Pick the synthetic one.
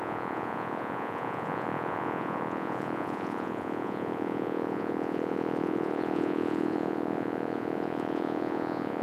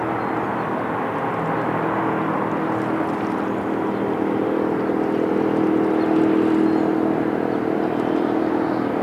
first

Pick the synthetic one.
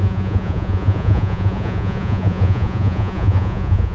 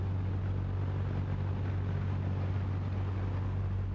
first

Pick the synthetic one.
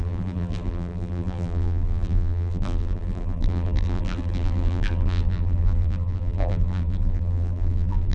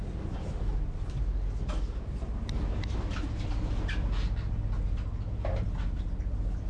first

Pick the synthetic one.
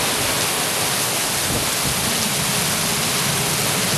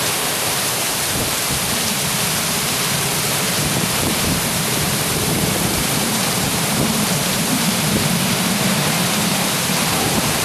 second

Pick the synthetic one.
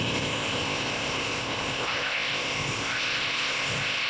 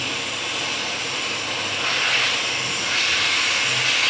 first